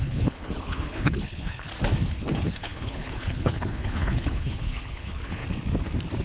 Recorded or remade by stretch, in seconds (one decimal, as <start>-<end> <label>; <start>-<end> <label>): 0.0-1.7 remade; 1.7-2.3 recorded; 2.3-5.4 remade; 5.4-6.2 recorded

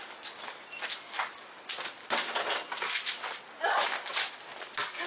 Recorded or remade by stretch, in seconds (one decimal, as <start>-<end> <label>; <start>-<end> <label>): 0.0-5.1 recorded

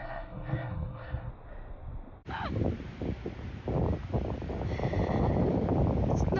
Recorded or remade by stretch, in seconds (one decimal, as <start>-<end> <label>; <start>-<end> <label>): 0.0-1.3 remade; 1.3-6.4 recorded

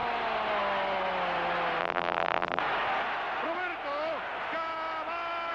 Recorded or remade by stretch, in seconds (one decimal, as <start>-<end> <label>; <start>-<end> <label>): 0.0-1.8 recorded; 1.8-2.6 remade; 2.6-5.5 recorded

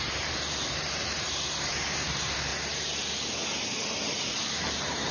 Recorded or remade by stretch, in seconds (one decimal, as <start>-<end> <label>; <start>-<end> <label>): 0.0-2.5 remade; 2.5-4.0 recorded; 4.0-5.1 remade

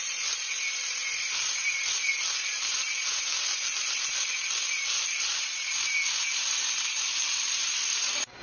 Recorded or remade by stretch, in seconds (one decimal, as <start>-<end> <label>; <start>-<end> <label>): 0.0-7.7 remade; 7.7-8.4 recorded

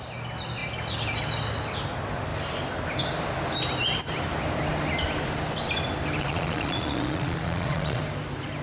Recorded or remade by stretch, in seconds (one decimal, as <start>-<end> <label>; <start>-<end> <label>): 0.0-6.2 recorded; 6.2-8.0 remade; 8.0-8.6 recorded

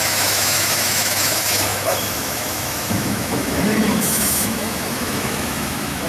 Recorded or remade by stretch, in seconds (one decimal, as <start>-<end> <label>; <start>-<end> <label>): 0.0-6.1 remade